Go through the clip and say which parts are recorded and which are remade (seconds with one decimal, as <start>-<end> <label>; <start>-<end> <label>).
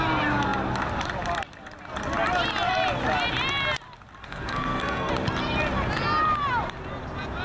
0.0-4.2 recorded; 4.2-5.1 remade; 5.1-7.4 recorded